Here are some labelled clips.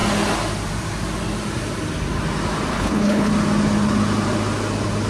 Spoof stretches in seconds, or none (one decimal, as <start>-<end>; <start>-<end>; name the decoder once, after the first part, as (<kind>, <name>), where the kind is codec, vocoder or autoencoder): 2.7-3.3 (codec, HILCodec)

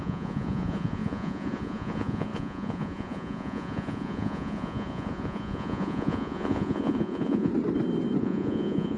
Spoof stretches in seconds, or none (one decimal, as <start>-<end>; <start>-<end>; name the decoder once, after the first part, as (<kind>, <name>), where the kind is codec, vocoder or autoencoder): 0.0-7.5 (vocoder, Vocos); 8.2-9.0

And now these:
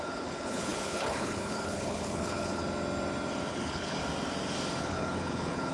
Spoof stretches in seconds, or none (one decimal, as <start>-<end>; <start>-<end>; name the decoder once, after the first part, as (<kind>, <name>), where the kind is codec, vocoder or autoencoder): 0.0-2.6 (codec, HILCodec); 3.5-4.0; 4.8-5.7

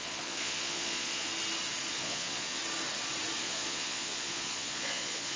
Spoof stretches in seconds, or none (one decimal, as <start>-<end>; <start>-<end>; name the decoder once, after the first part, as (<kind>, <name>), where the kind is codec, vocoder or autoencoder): 0.0-1.3 (vocoder, Vocos); 1.9-2.6; 3.4-5.4

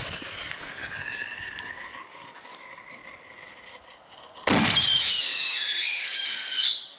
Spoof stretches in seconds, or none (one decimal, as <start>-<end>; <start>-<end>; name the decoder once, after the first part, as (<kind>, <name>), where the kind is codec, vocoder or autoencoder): 0.0-3.0 (codec, DAC); 5.2-7.0

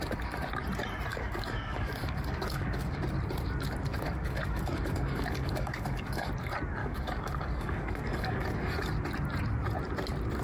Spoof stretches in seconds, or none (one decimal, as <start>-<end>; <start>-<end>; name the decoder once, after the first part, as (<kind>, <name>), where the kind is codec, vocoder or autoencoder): 1.1-3.0 (codec, DAC); 3.9-6.3; 6.8-8.5